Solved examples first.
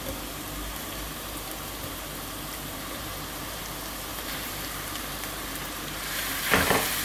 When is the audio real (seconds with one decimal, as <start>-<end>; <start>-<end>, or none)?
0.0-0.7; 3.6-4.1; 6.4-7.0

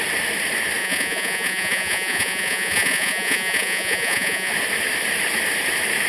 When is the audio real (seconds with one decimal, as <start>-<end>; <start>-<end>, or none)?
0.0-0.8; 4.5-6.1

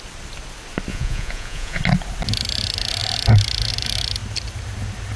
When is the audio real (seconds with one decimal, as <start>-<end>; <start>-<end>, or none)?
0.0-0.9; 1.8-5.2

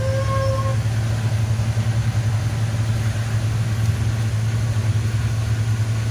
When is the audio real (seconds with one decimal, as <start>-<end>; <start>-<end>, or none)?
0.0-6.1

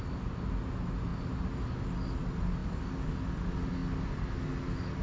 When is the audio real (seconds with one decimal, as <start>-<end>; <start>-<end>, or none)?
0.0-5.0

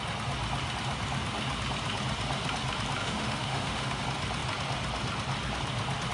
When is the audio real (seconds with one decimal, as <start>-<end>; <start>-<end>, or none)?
0.0-3.0; 4.0-6.1

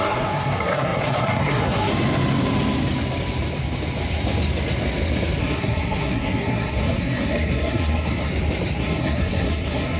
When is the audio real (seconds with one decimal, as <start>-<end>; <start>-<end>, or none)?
1.9-5.4; 8.3-8.8